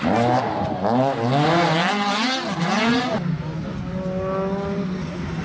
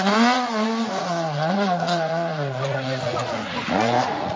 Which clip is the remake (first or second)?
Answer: second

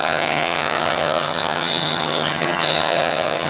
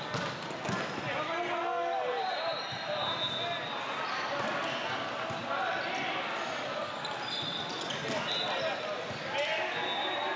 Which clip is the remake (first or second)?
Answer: first